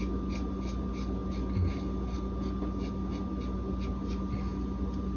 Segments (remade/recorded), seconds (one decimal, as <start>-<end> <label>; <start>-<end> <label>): 0.0-5.2 recorded